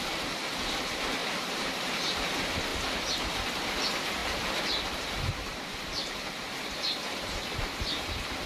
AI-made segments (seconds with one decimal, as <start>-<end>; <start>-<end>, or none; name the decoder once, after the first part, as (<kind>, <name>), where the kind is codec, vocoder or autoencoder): 1.2-2.0 (vocoder, BigVGAN v2); 4.2-8.0